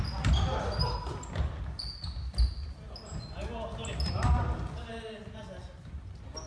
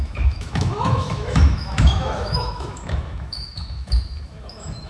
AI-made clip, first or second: second